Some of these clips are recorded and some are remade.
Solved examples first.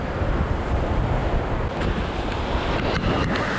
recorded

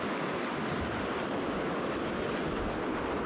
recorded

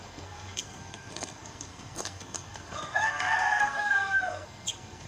remade